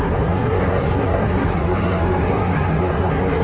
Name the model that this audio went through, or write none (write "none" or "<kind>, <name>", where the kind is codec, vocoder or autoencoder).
codec, SNAC